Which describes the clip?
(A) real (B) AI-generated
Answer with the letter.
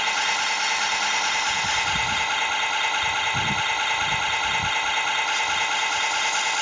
A